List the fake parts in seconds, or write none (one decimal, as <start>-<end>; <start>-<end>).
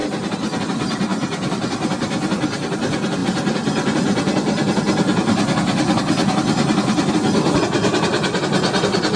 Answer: none